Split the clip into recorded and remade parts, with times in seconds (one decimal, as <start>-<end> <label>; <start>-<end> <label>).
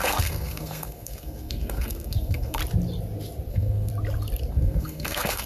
0.0-2.6 remade; 2.6-3.5 recorded; 3.5-3.9 remade; 3.9-4.5 recorded; 4.5-5.5 remade